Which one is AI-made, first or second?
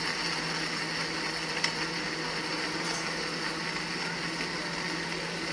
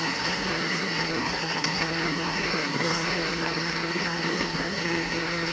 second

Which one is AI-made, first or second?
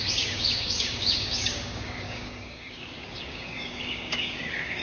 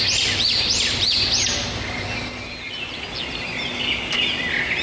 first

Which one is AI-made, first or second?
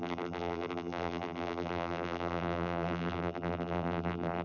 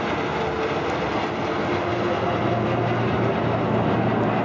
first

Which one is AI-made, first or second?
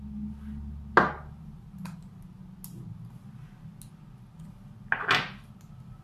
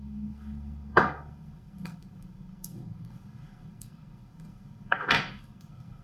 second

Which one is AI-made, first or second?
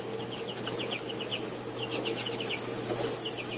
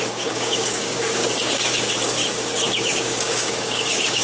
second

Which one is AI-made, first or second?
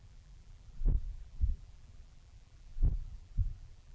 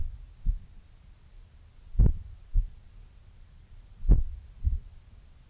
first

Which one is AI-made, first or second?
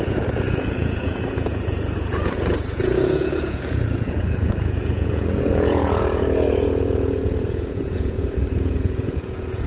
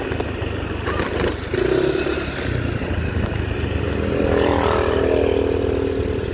first